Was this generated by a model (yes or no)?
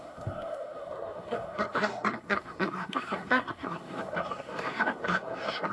yes